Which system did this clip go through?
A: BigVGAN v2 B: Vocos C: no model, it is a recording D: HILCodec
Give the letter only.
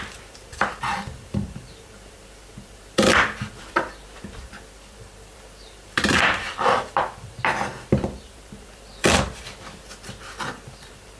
A